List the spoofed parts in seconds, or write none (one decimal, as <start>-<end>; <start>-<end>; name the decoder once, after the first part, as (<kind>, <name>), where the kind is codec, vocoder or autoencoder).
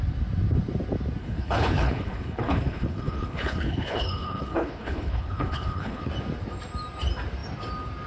1.2-6.1 (codec, HILCodec)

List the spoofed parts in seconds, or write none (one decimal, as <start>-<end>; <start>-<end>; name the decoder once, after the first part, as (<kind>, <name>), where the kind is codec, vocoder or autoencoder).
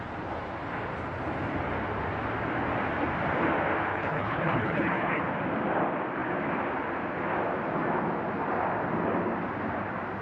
3.9-5.2 (codec, HILCodec)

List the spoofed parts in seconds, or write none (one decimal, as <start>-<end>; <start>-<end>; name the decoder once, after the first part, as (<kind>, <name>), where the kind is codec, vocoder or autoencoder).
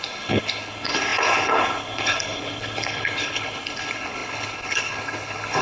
0.0-5.6 (codec, HILCodec)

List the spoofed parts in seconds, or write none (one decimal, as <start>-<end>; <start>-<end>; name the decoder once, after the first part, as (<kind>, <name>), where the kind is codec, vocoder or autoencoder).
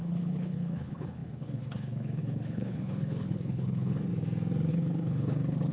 0.0-4.1 (codec, HILCodec); 4.7-5.7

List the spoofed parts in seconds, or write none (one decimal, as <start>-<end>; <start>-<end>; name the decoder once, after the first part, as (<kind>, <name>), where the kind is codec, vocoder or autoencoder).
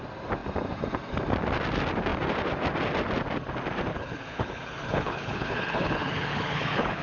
3.9-7.0 (codec, HILCodec)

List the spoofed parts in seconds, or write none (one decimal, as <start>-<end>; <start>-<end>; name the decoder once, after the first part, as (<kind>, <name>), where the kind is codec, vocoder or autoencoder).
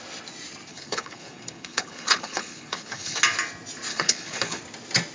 0.7-3.2 (codec, HILCodec); 3.9-4.6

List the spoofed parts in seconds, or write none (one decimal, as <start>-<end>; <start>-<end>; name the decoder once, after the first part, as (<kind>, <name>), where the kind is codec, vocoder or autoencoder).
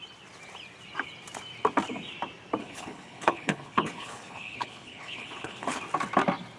2.6-5.8 (codec, HILCodec)